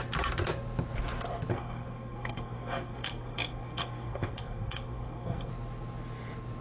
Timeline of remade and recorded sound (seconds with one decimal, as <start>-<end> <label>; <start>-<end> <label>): 0.0-1.5 recorded; 1.5-5.5 remade; 5.5-6.6 recorded